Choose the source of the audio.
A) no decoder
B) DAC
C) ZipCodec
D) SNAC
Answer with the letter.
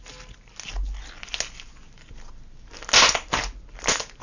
A